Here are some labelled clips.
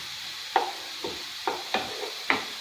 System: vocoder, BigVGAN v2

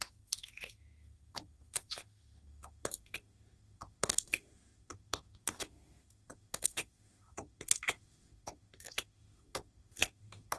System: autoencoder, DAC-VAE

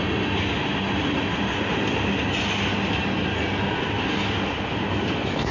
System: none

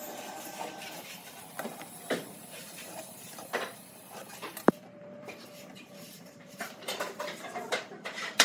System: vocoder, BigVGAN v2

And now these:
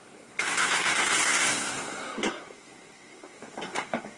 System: codec, SNAC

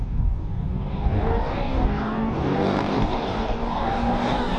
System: codec, DAC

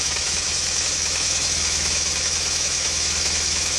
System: autoencoder, DAC-VAE